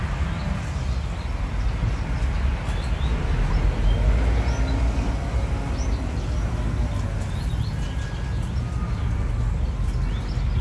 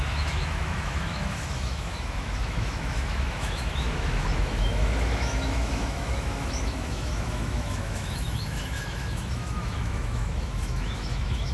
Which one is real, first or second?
first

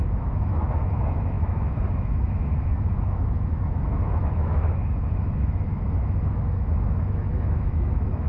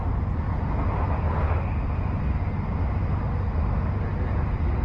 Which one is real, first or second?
second